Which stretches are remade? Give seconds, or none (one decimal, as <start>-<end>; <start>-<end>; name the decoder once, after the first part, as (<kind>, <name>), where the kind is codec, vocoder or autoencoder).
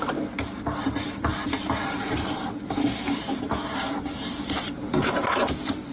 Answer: 0.0-5.9 (vocoder, BigVGAN v2)